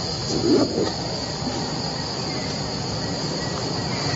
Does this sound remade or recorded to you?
recorded